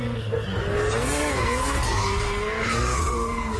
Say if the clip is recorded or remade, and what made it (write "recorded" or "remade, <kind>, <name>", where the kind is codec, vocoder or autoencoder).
remade, codec, SNAC